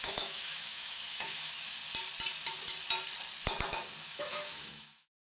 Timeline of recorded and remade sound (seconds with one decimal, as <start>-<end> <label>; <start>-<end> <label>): 0.0-1.8 remade; 1.8-4.0 recorded; 4.0-5.3 remade

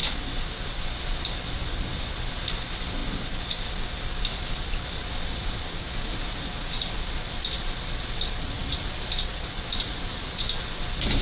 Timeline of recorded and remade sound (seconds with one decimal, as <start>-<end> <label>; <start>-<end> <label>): 0.0-11.2 recorded

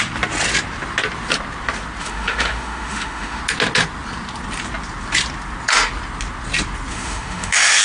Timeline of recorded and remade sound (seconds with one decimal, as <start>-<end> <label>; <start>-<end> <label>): 0.0-2.0 recorded; 2.0-3.4 remade; 3.4-6.9 recorded; 6.9-7.8 remade

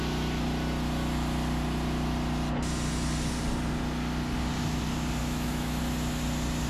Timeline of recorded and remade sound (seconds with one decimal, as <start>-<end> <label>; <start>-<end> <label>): 0.0-5.2 recorded; 5.2-5.8 remade; 5.8-6.7 recorded